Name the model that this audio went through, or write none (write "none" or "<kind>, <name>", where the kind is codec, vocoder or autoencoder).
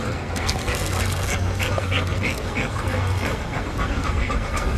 codec, SNAC